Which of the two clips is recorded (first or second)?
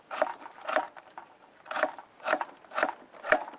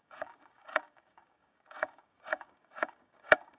first